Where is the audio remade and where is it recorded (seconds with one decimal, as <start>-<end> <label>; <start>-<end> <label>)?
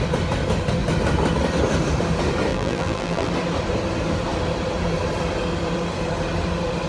0.0-2.5 recorded; 2.5-3.3 remade; 3.3-6.9 recorded